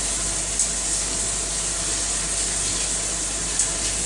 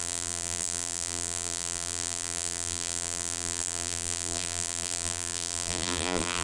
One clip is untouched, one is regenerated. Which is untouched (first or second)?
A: first